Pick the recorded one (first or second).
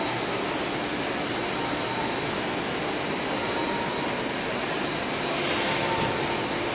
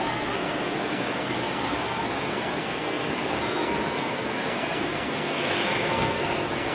first